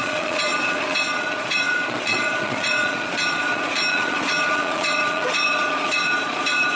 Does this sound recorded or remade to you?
remade